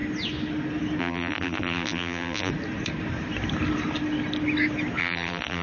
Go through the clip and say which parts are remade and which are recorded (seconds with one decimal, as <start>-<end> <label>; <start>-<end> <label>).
0.0-1.0 recorded; 1.0-2.5 remade; 2.5-5.0 recorded; 5.0-5.6 remade